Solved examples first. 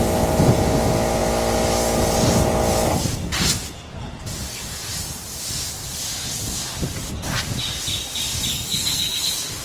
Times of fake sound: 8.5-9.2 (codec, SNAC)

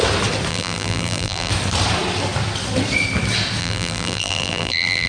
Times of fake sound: 0.5-1.5 (vocoder, BigVGAN v2); 3.6-5.1

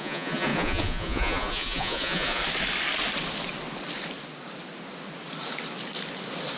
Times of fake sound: 0.0-2.4 (vocoder, Vocos)